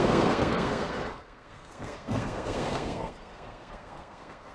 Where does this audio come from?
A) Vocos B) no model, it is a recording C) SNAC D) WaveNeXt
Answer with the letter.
C